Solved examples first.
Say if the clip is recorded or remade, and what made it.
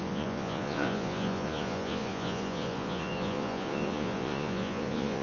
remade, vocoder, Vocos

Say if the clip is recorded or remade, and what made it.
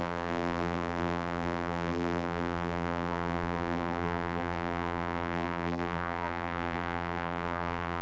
remade, vocoder, BigVGAN v2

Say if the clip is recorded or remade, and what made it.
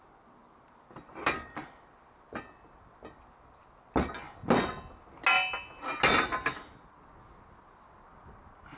recorded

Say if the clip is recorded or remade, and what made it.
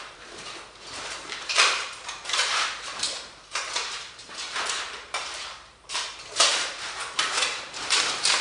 remade, vocoder, BigVGAN v2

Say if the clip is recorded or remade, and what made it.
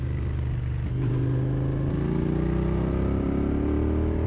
recorded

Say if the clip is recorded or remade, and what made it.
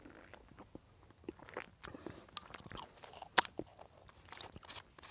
recorded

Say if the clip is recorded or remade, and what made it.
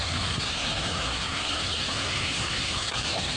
remade, codec, SNAC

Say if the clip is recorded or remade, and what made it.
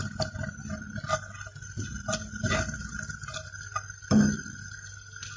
recorded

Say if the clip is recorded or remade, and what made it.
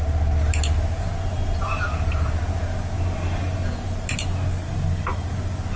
recorded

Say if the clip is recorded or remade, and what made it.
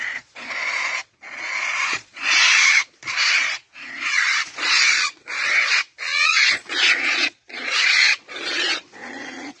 remade, vocoder, Vocos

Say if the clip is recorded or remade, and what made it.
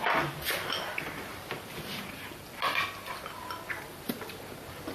recorded